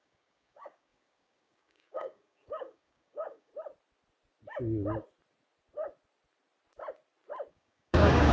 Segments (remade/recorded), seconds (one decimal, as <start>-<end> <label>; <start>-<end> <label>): 0.0-3.5 remade; 3.5-7.5 recorded; 7.5-8.3 remade